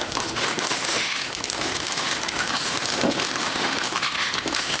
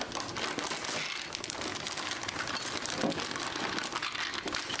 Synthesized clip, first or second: first